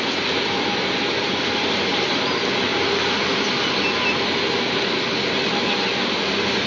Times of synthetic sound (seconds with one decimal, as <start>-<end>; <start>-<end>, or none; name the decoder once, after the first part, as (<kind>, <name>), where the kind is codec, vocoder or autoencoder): 0.0-2.7 (vocoder, BigVGAN v2); 6.3-6.7